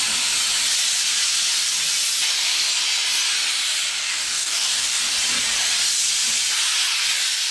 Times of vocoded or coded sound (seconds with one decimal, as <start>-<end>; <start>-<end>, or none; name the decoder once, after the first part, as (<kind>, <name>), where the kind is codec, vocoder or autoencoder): 4.0-5.0 (codec, DAC)